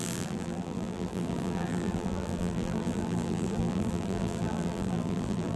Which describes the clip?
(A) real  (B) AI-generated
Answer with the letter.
B